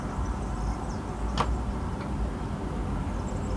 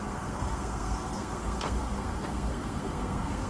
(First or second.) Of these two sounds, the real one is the first